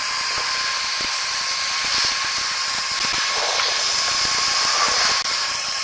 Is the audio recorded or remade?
recorded